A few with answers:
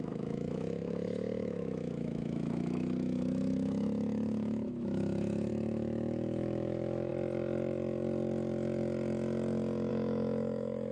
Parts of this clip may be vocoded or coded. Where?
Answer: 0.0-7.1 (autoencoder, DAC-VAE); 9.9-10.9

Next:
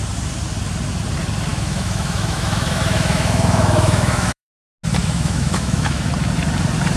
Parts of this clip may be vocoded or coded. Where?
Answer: 1.5-4.5 (autoencoder, DAC-VAE); 5.0-6.1

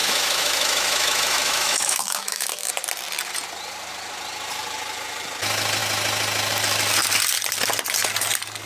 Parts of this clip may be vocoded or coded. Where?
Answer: 0.0-2.7 (autoencoder, DAC-VAE)

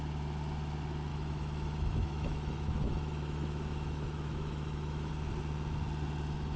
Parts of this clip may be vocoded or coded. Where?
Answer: 1.1-5.1 (autoencoder, DAC-VAE)

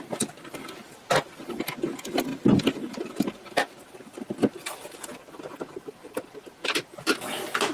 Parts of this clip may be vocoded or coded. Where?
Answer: none

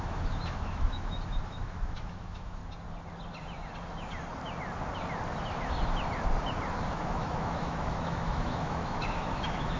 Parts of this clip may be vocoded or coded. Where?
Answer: 0.0-2.6 (autoencoder, DAC-VAE); 6.9-9.8

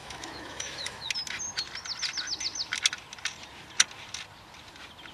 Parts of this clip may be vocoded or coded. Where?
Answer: 0.0-1.1 (autoencoder, DAC-VAE)

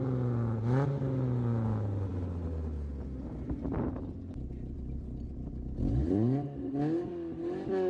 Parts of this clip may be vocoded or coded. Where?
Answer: none